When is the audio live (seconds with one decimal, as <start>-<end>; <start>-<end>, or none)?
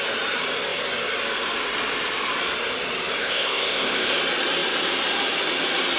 0.0-3.2; 4.1-6.0